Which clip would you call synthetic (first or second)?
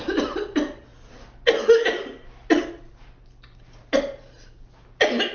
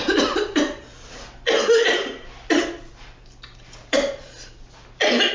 second